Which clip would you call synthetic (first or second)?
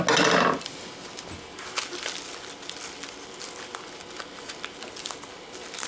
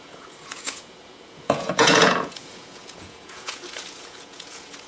second